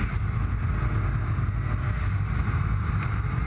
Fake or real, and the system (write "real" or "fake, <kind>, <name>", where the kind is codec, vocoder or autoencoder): real